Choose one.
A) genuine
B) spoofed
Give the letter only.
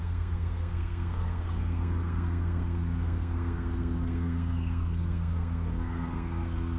B